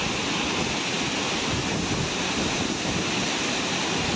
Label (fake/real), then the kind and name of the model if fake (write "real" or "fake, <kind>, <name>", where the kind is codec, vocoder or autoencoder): real